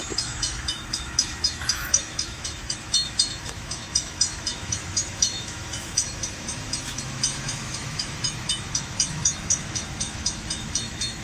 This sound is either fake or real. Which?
fake